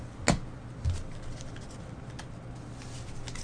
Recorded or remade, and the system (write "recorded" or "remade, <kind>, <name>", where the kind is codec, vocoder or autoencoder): recorded